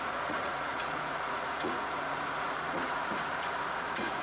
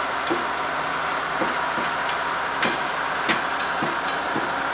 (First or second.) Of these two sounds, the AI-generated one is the first